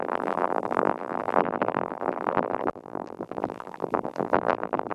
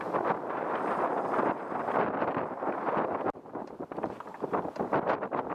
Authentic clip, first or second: second